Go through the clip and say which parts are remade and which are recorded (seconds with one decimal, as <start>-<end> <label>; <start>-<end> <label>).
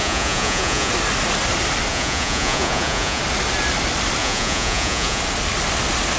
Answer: 0.0-0.9 remade; 0.9-1.9 recorded; 1.9-3.2 remade; 3.2-4.2 recorded; 4.2-5.2 remade; 5.2-6.2 recorded